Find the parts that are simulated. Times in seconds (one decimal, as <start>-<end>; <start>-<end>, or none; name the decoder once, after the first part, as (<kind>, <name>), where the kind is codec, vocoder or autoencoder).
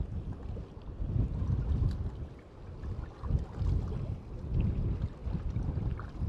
none